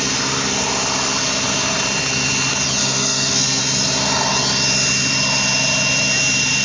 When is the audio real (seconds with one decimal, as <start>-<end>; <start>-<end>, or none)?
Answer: 0.0-2.8; 3.6-6.6